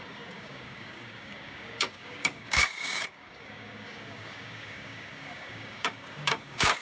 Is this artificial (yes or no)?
yes